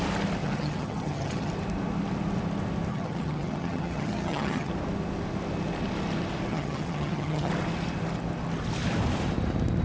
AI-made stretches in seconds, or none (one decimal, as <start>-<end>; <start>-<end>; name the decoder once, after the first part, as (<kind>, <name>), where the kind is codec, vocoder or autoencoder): 0.4-1.5 (vocoder, HiFi-GAN); 2.9-4.7; 6.5-7.5